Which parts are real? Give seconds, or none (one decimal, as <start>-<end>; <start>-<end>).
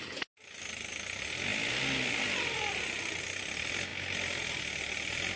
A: 0.0-5.4